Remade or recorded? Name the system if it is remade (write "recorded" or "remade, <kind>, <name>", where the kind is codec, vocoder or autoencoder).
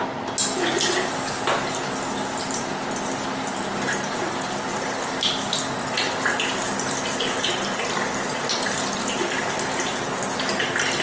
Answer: recorded